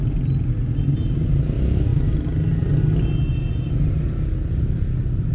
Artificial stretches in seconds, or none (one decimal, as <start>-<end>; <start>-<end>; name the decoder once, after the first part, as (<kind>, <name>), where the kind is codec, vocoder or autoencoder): none